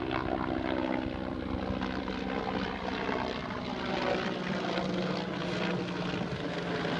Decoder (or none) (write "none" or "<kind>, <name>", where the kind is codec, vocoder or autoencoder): none